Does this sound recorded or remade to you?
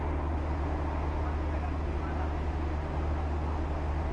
recorded